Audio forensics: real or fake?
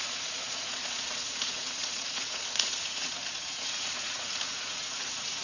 fake